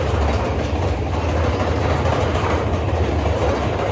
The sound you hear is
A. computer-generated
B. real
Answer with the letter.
B